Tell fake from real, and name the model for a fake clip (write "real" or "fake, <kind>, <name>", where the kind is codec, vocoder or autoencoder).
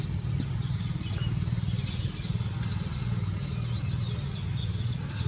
real